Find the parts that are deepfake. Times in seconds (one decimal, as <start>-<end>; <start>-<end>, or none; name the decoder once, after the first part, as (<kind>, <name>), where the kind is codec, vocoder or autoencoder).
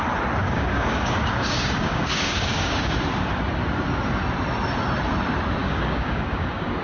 0.4-2.9 (codec, DAC); 5.6-6.8